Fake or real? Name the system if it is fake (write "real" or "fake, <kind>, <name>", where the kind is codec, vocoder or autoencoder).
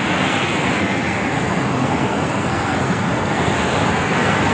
fake, codec, SNAC